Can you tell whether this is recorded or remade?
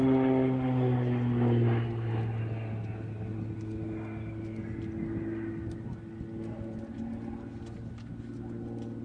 recorded